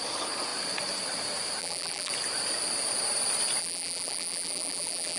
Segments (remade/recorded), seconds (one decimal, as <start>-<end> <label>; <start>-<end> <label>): 0.0-1.6 recorded; 1.6-2.1 remade; 2.1-3.6 recorded; 3.6-5.2 remade